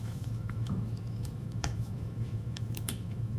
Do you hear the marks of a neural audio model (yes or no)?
yes